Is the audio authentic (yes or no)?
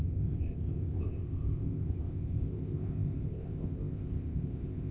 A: no